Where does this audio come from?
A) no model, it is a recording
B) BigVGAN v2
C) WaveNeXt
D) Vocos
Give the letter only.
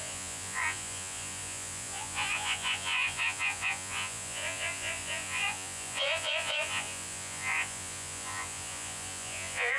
D